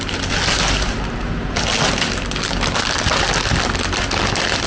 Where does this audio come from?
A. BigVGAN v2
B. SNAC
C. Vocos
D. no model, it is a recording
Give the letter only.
D